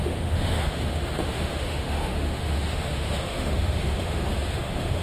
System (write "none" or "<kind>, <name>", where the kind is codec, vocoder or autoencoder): autoencoder, DAC-VAE